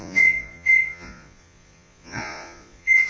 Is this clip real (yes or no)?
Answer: no